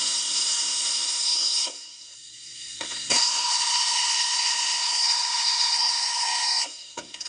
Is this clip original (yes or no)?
no